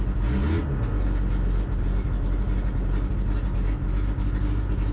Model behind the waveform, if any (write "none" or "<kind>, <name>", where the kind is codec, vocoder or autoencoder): none